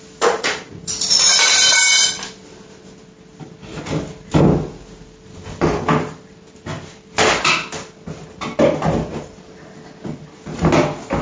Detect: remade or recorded recorded